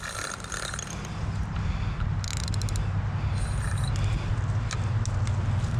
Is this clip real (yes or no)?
yes